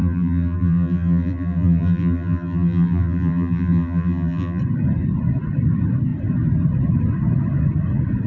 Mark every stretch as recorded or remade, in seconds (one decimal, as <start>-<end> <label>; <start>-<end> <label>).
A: 0.0-4.6 remade; 4.6-8.3 recorded

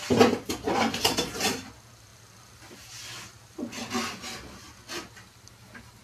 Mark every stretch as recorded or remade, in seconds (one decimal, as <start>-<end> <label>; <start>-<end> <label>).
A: 0.0-6.0 recorded

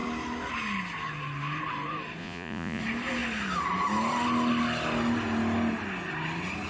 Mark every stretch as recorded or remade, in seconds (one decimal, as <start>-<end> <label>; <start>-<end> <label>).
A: 0.0-2.2 recorded; 2.2-2.8 remade; 2.8-6.7 recorded

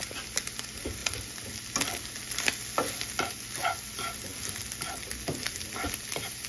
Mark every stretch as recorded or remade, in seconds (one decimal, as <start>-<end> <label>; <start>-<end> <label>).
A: 0.0-6.5 recorded

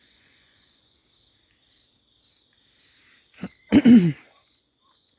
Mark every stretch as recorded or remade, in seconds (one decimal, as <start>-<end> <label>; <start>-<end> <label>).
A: 0.0-1.0 remade; 1.0-3.8 recorded; 3.8-5.2 remade

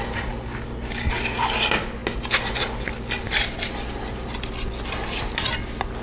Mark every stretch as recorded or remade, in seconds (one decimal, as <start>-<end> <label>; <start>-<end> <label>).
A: 0.0-6.0 recorded

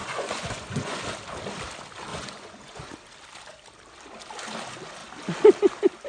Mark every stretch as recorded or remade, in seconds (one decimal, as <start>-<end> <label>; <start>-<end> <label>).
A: 0.0-1.0 remade; 1.0-2.1 recorded; 2.1-2.9 remade; 2.9-6.1 recorded